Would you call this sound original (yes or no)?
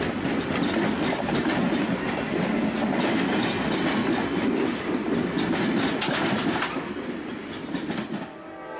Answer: yes